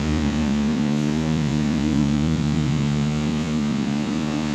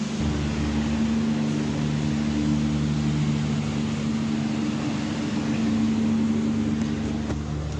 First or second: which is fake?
first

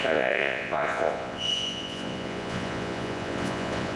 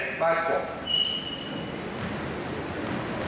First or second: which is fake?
first